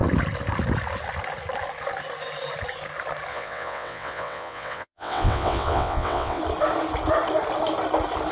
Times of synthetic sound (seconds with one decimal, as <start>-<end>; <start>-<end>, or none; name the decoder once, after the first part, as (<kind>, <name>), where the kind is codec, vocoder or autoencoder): 3.3-6.4 (vocoder, WaveNeXt)